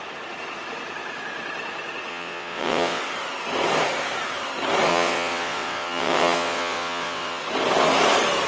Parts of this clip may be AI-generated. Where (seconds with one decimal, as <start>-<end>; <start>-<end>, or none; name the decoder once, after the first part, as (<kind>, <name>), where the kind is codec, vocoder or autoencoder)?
2.1-3.0 (vocoder, WaveNeXt); 4.9-7.4